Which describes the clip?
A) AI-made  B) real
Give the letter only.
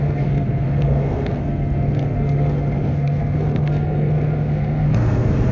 A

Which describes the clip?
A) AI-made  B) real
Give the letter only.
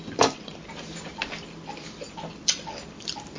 B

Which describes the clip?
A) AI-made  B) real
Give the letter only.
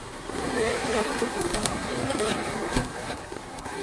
A